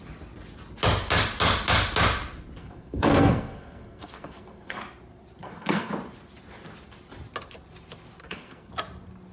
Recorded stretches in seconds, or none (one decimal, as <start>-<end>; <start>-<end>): 0.0-2.6; 4.8-5.4; 5.9-8.2; 8.7-9.3